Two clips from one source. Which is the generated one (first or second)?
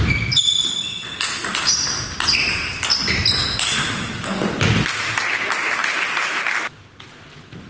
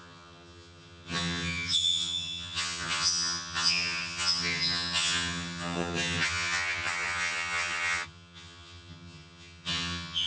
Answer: second